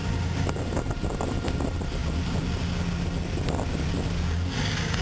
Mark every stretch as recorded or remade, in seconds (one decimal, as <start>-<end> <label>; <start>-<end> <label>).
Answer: 0.0-5.0 recorded